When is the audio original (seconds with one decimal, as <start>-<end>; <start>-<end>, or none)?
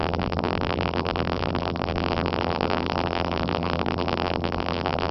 none